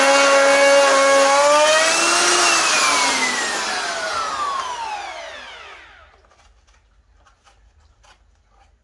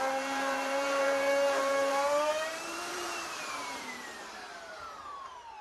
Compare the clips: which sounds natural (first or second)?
first